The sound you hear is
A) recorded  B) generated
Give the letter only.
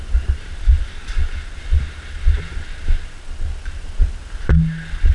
A